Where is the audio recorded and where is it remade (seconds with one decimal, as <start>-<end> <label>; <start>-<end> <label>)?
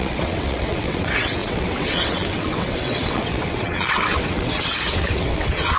0.0-5.8 remade